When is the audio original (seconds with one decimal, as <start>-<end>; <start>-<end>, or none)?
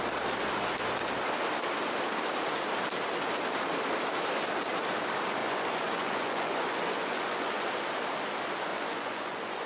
0.0-5.4; 7.7-8.7